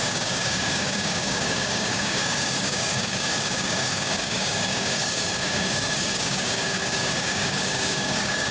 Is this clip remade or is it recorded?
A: remade